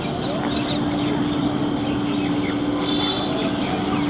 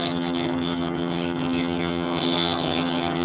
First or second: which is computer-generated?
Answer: second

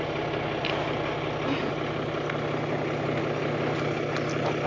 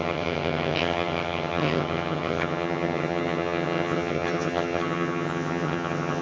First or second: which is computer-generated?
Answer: second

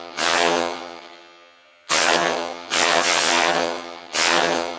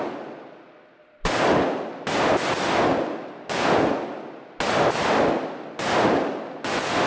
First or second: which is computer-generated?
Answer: first